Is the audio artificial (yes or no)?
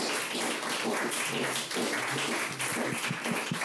no